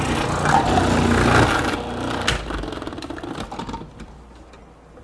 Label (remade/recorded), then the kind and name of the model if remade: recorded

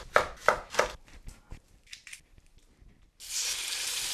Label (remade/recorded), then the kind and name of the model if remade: recorded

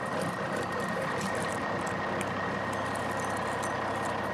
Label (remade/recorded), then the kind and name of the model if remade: recorded